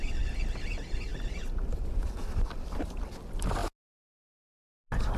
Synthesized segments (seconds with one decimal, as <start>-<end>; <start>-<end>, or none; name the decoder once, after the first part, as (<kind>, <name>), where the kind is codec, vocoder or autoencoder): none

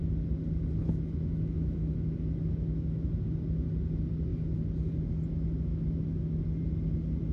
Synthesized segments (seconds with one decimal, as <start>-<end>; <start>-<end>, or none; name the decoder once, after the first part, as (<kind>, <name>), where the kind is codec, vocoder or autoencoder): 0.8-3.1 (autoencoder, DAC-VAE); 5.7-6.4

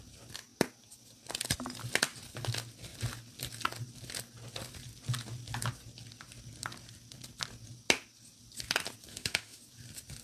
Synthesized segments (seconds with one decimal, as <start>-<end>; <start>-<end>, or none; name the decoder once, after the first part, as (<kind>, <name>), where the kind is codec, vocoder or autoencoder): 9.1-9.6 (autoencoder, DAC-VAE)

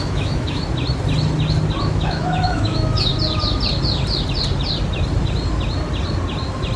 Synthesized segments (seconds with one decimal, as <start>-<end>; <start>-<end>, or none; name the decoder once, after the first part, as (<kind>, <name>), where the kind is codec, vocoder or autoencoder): 0.0-0.6 (autoencoder, DAC-VAE); 1.8-3.1

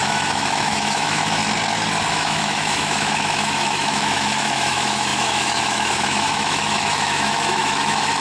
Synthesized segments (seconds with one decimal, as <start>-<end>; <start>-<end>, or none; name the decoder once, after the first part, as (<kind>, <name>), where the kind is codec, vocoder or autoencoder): 0.0-1.4 (autoencoder, DAC-VAE); 2.1-8.2

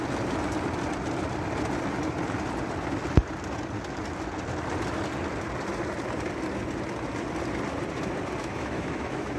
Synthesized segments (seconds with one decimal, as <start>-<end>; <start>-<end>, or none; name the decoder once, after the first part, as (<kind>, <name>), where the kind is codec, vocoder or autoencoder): 8.4-9.4 (autoencoder, DAC-VAE)

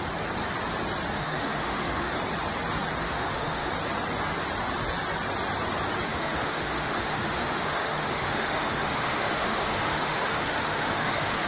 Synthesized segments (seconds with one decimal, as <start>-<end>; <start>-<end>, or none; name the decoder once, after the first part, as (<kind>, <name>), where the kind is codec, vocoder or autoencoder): 1.1-2.1 (autoencoder, DAC-VAE); 3.0-3.7; 6.1-11.5